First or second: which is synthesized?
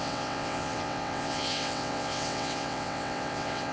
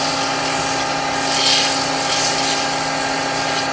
first